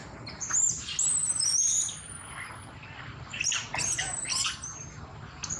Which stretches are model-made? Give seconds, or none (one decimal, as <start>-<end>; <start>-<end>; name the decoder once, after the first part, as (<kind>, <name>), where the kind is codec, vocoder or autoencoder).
none